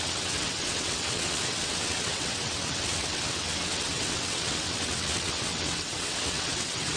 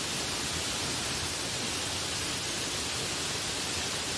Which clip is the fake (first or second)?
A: first